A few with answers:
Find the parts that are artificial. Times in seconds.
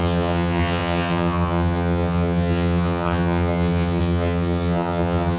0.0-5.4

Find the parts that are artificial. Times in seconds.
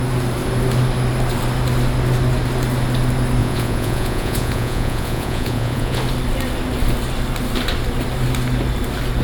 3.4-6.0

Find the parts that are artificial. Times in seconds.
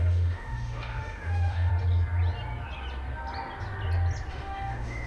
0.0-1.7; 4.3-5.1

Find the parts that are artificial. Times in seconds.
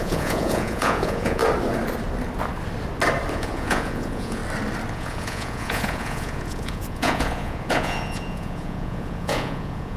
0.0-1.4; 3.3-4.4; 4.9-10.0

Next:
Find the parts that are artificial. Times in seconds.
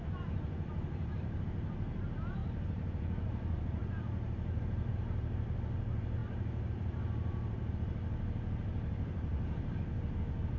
2.4-4.9; 6.2-7.8; 9.3-9.8